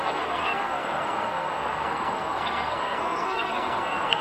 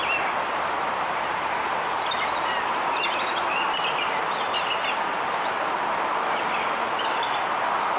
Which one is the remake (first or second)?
first